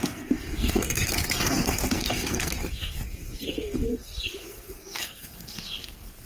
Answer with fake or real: fake